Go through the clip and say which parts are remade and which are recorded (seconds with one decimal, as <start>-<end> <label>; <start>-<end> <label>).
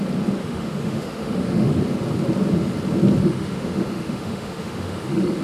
0.0-0.4 recorded; 0.4-1.8 remade; 1.8-3.2 recorded; 3.2-5.4 remade